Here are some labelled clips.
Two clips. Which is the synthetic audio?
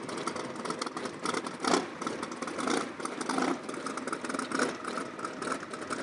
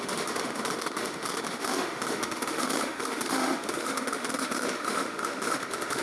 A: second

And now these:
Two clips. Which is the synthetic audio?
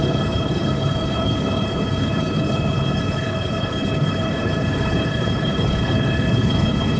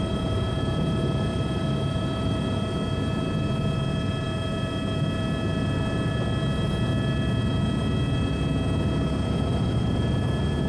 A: first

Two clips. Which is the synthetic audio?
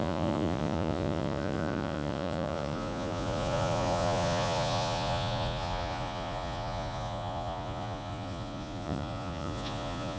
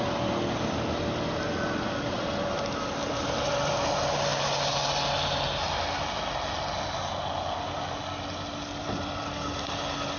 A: first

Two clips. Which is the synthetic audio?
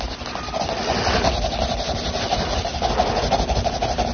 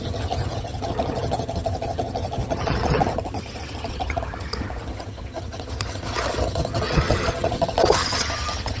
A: second